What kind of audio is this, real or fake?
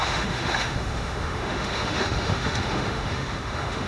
fake